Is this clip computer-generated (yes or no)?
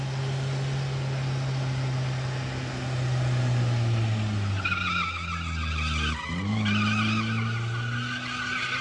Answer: no